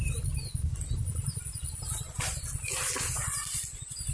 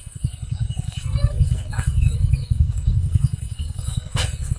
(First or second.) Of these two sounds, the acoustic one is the first